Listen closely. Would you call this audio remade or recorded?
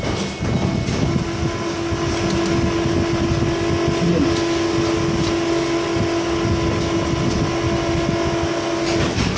recorded